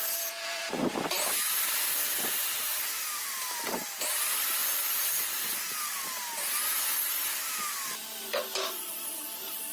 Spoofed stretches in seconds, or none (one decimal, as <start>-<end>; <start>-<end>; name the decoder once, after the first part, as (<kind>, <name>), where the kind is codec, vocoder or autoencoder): 0.0-0.7 (vocoder, Vocos)